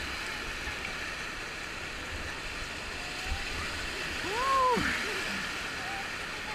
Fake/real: real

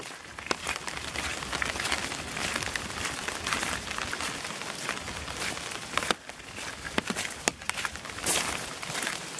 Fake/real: real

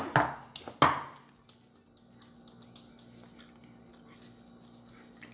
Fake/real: real